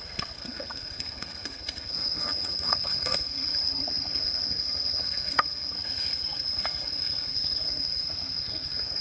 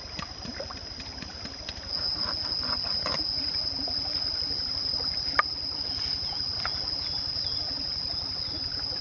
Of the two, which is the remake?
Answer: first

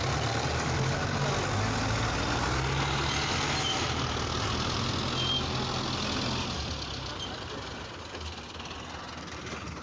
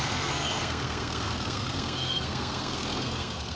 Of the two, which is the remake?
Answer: second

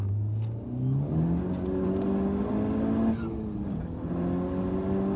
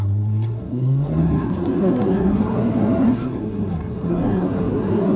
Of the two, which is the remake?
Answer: second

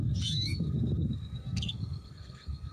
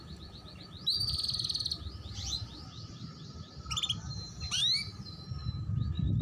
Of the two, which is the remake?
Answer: first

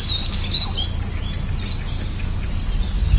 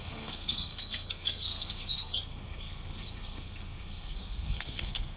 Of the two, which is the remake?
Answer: second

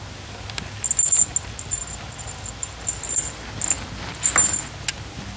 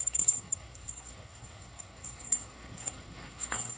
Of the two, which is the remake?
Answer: second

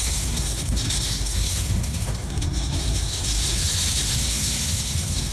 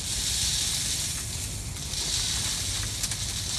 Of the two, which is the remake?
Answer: first